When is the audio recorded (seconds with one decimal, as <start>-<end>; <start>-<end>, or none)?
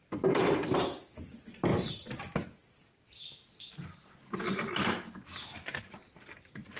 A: 0.0-6.8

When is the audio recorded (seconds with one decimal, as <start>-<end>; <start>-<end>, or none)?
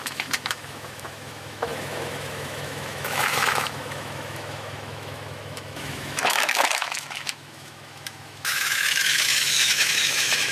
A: none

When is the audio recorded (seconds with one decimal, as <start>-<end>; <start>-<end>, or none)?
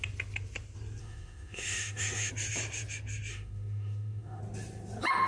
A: 0.0-1.0; 2.3-3.3; 4.4-5.3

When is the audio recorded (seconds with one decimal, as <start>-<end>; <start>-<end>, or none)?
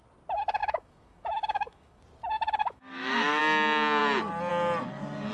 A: 0.0-0.6; 2.0-2.6; 3.4-5.3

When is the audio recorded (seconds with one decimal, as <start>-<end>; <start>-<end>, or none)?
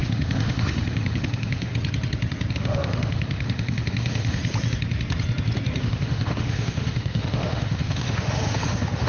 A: 1.7-2.5; 4.4-5.8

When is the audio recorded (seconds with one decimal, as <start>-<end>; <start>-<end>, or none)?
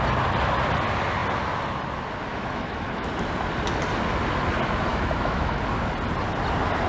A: 0.0-2.3; 3.1-4.9; 5.6-6.9